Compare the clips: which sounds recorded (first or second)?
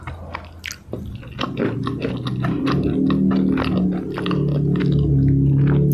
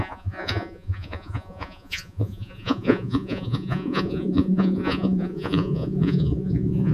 first